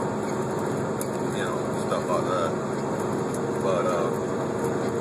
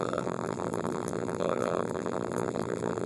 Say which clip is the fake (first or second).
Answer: second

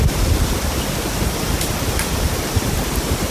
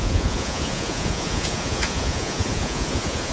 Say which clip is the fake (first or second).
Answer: second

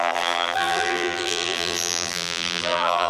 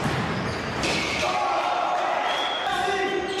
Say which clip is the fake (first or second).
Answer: first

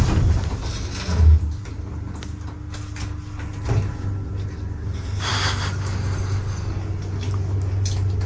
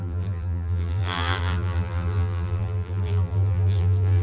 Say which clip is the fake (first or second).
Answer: second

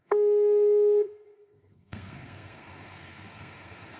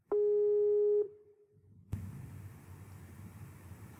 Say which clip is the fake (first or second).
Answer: first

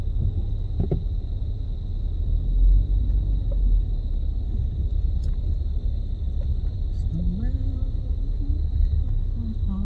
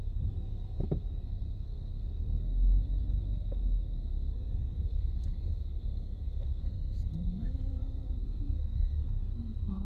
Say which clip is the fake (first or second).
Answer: second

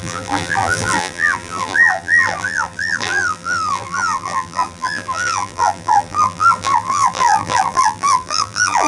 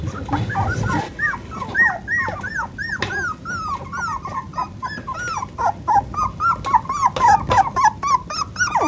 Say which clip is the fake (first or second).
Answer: first